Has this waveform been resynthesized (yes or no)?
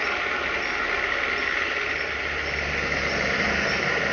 no